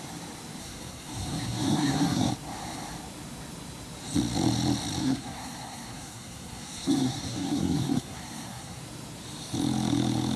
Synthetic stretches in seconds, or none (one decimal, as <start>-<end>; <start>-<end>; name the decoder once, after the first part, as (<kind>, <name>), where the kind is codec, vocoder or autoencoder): 0.6-2.3 (codec, SNAC); 5.0-8.8